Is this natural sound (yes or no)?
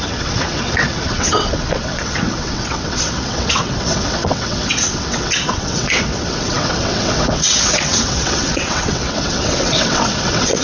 no